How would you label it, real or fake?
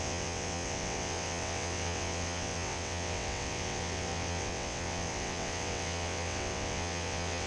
fake